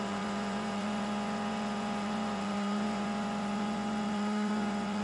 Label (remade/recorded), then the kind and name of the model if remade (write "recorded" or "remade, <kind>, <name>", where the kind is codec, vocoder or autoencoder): remade, vocoder, Vocos